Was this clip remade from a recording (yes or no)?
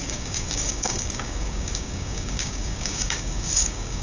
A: yes